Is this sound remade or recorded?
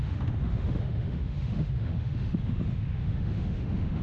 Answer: remade